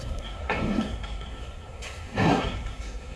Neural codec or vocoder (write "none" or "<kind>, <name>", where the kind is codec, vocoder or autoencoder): codec, SNAC